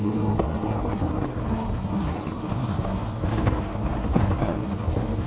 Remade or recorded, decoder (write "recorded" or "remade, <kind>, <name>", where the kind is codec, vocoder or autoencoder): remade, codec, SNAC